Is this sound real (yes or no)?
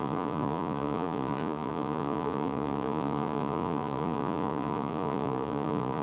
no